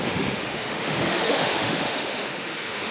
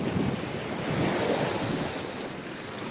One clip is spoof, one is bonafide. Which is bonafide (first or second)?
second